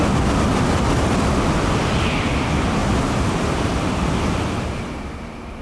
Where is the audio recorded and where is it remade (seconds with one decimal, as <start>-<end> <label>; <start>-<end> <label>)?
0.0-2.8 recorded; 2.8-3.6 remade; 3.6-5.6 recorded